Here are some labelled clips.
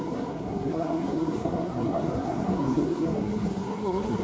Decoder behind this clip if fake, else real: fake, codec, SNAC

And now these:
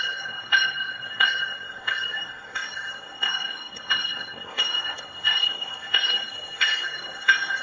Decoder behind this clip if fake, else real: fake, codec, SNAC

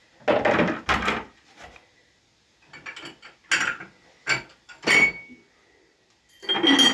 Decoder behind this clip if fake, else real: real